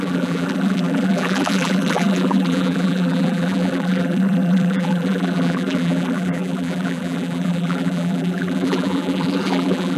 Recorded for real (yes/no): no